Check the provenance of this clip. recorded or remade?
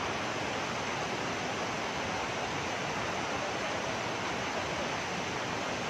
recorded